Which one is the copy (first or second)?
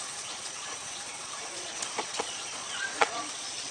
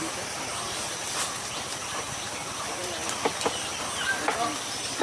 first